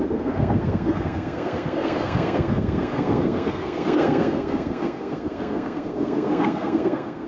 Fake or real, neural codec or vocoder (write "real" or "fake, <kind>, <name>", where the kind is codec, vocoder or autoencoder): fake, codec, SNAC